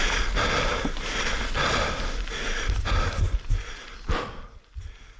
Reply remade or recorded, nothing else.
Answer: recorded